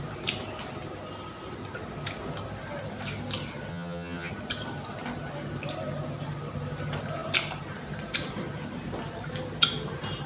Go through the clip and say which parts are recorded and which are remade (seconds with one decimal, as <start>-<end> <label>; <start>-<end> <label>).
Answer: 0.0-3.7 recorded; 3.7-4.3 remade; 4.3-10.3 recorded